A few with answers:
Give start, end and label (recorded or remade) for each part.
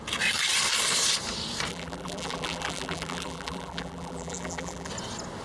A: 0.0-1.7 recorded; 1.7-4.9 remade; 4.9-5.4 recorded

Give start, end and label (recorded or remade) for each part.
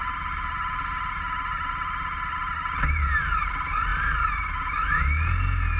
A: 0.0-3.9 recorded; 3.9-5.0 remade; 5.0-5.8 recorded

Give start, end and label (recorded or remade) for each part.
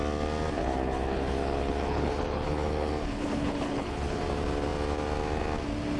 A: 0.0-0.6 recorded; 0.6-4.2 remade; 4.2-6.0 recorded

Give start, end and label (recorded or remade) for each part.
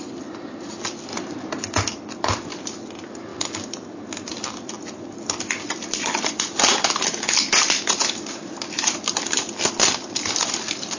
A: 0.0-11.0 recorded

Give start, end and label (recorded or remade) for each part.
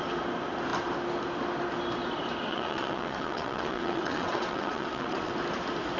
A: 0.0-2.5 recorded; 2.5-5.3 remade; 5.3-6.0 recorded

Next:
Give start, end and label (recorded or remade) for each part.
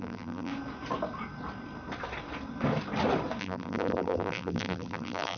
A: 0.0-0.5 remade; 0.5-3.4 recorded; 3.4-5.4 remade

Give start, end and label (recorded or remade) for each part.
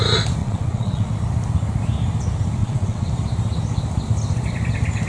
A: 0.0-0.4 recorded; 0.4-1.1 remade; 1.1-2.6 recorded; 2.6-3.1 remade; 3.1-5.1 recorded